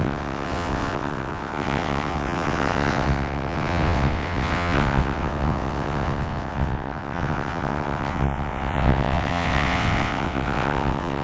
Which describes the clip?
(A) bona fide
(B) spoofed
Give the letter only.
B